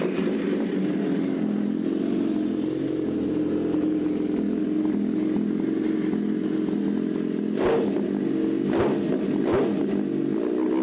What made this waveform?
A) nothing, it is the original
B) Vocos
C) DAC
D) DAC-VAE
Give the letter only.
A